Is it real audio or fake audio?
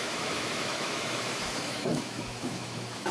fake